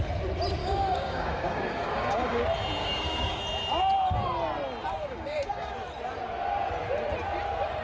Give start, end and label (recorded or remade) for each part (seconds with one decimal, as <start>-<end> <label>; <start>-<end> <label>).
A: 0.0-0.6 recorded; 0.6-2.4 remade; 2.4-2.8 recorded; 2.8-3.4 remade; 3.4-5.0 recorded; 5.0-5.7 remade; 5.7-7.8 recorded